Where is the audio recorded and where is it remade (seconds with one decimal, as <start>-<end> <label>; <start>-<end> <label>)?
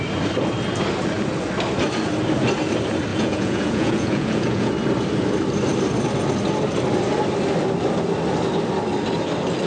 0.0-3.1 recorded; 3.1-4.7 remade; 4.7-9.7 recorded